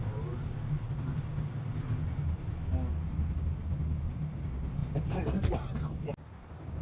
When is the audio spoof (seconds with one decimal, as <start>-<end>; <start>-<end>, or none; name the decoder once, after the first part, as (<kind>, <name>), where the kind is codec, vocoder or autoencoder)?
none